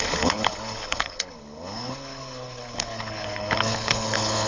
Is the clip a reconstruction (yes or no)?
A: yes